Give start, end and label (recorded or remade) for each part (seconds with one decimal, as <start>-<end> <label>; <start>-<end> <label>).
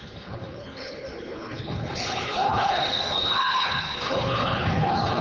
0.0-5.2 remade